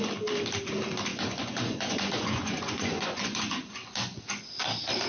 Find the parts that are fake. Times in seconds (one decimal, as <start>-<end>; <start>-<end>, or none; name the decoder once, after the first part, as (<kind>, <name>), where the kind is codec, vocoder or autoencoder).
1.1-4.2 (vocoder, Vocos)